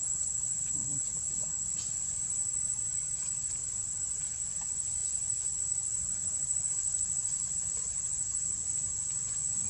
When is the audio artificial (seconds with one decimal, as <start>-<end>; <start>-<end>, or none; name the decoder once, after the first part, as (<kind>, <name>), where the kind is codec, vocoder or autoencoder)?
0.0-3.6 (vocoder, Vocos); 4.2-9.7